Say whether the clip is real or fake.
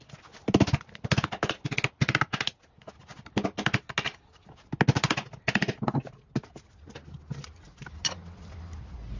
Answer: real